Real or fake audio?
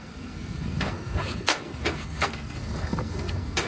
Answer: fake